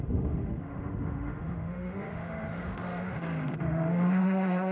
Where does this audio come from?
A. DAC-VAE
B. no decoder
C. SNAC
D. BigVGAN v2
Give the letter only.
A